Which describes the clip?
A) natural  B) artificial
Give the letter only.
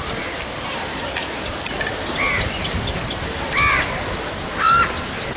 A